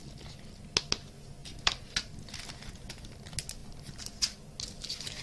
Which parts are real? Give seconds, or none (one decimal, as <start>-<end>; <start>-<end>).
0.0-5.2